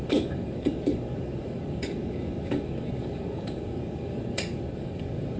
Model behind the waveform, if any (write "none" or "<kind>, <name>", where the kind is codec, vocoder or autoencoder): codec, DAC